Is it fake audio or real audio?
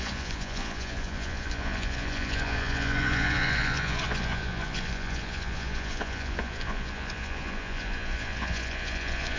fake